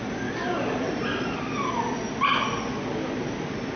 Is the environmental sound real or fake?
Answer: real